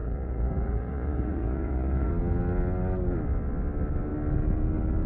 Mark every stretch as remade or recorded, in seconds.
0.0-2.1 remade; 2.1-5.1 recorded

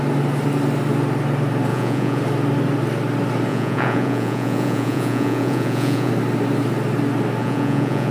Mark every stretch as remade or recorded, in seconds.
0.0-1.7 recorded; 1.7-2.2 remade; 2.2-3.5 recorded; 3.5-6.1 remade; 6.1-7.4 recorded; 7.4-8.1 remade

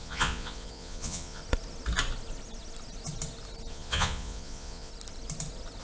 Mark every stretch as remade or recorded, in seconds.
0.0-1.4 remade; 1.4-3.7 recorded; 3.7-4.9 remade; 4.9-5.8 recorded

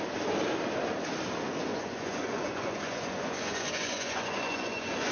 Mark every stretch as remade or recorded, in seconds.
0.0-1.7 recorded; 1.7-5.1 remade

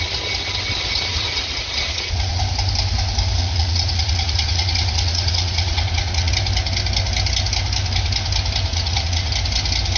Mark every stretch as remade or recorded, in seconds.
0.0-1.1 recorded; 1.1-2.4 remade; 2.4-3.4 recorded; 3.4-6.3 remade; 6.3-8.7 recorded; 8.7-9.3 remade; 9.3-10.0 recorded

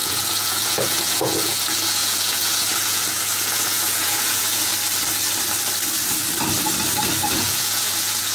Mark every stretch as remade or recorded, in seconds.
0.0-4.7 remade; 4.7-7.3 recorded; 7.3-8.3 remade

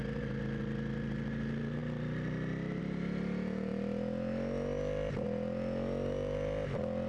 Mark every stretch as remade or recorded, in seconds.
0.0-7.1 recorded

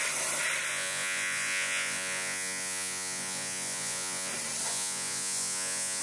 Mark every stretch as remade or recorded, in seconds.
0.0-0.7 recorded; 0.7-4.3 remade; 4.3-4.7 recorded; 4.7-6.0 remade